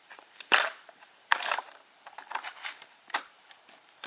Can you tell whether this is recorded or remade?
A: remade